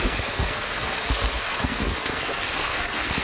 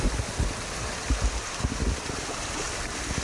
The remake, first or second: first